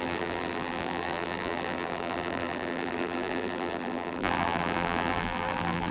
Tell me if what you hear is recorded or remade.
remade